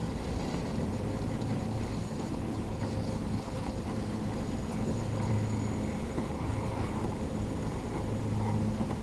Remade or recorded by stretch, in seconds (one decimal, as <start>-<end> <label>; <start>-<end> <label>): 0.0-2.0 recorded; 2.0-3.8 remade; 3.8-4.7 recorded; 4.7-5.3 remade; 5.3-6.0 recorded; 6.0-6.9 remade; 6.9-9.0 recorded